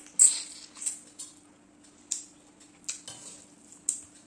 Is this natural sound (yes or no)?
yes